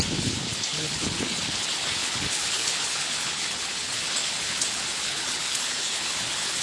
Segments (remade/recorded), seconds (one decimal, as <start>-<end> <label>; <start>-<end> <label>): 0.0-6.6 remade